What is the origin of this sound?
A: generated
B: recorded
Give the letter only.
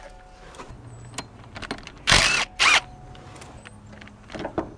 B